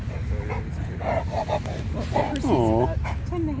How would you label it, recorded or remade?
recorded